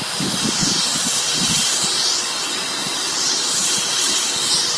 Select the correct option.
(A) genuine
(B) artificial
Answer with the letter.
A